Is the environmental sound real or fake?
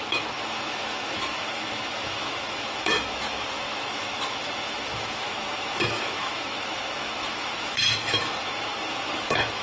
fake